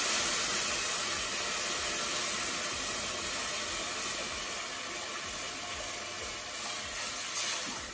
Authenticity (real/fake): real